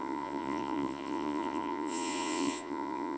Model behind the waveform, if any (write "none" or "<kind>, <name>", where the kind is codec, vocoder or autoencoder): vocoder, Vocos